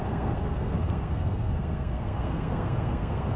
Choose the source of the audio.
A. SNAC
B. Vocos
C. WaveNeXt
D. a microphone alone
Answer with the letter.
A